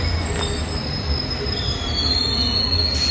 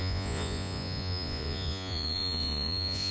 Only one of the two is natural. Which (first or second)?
first